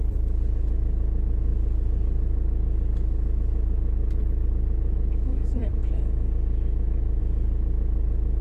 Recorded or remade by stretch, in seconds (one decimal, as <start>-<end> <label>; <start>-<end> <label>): 0.0-5.8 remade; 5.8-7.2 recorded; 7.2-8.4 remade